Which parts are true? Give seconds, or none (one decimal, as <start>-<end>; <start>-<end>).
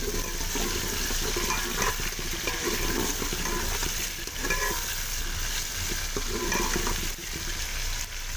0.0-8.4